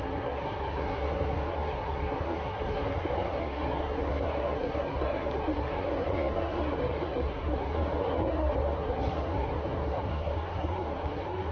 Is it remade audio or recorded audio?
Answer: remade